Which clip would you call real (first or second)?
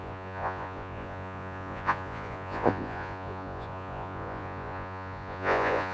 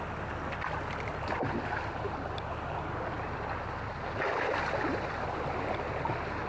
second